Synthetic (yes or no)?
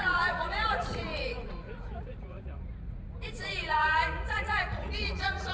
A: yes